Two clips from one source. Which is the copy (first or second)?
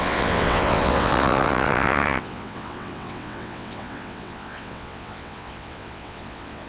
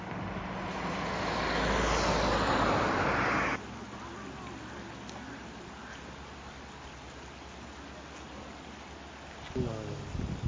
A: first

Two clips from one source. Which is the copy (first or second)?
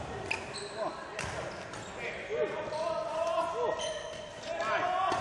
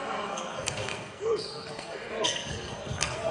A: second